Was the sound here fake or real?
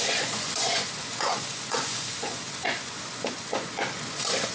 fake